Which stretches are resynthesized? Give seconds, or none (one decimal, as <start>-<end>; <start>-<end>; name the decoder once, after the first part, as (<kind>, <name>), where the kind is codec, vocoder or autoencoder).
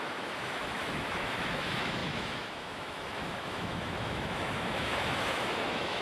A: 0.0-6.0 (autoencoder, DAC-VAE)